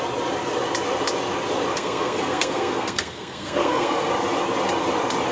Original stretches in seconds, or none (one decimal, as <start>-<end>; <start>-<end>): 0.0-1.7; 4.1-5.3